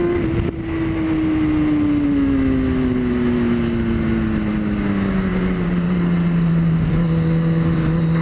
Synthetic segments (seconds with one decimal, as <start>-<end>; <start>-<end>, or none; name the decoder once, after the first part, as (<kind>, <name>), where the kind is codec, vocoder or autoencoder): 5.3-6.9 (vocoder, BigVGAN v2)